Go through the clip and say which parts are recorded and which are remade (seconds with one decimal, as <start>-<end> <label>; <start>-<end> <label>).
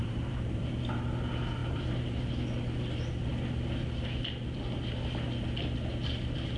0.0-0.6 remade; 0.6-1.6 recorded; 1.6-2.3 remade; 2.3-6.6 recorded